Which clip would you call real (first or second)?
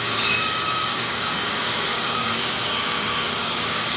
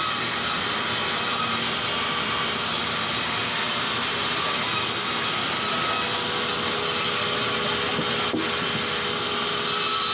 second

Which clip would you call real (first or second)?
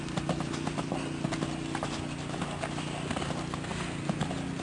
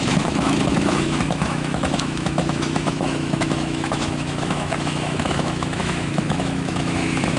first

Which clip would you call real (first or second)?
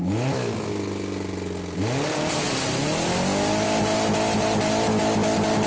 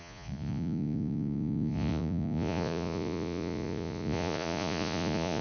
first